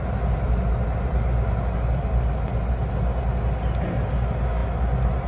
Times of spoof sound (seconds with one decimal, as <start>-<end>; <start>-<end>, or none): none